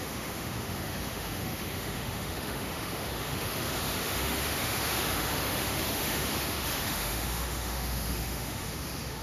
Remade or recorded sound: remade